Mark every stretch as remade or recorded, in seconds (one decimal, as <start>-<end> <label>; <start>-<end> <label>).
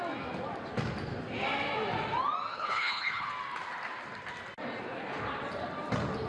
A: 0.0-2.5 recorded; 2.5-3.3 remade; 3.3-6.3 recorded